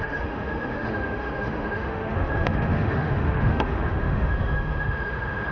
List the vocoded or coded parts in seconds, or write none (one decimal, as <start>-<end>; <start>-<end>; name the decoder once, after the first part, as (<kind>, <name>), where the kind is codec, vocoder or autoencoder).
0.0-5.5 (autoencoder, DAC-VAE)